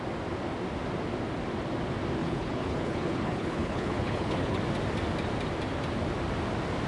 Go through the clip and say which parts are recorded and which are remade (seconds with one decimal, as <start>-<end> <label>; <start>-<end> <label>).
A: 0.0-2.2 recorded; 2.2-4.6 remade; 4.6-6.9 recorded